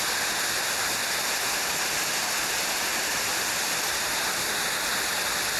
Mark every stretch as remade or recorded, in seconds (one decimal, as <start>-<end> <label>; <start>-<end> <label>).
0.0-5.6 recorded

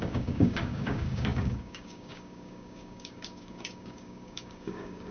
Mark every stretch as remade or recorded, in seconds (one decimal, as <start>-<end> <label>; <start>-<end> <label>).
0.0-5.1 remade

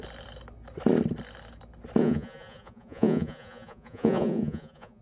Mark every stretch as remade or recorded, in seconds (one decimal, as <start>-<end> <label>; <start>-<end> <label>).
0.0-2.0 recorded; 2.0-5.0 remade